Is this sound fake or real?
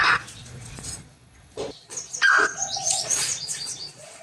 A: fake